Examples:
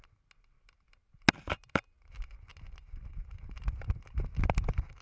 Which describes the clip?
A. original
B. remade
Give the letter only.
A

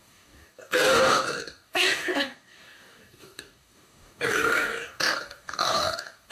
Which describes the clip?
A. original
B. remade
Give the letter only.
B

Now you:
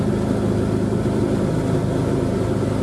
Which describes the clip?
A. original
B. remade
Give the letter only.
A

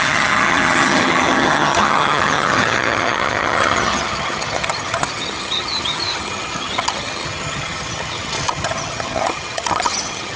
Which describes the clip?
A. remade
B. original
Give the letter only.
A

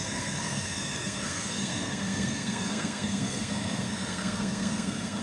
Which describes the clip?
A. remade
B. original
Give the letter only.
A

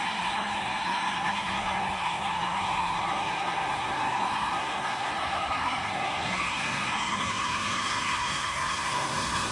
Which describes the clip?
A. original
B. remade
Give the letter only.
B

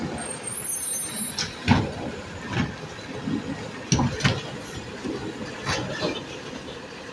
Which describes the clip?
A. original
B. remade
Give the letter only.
A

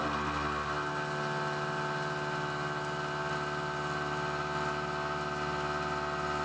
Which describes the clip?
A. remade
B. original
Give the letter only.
B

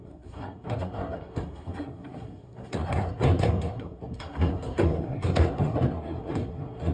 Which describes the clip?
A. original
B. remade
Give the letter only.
B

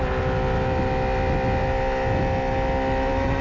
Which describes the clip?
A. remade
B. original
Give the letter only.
B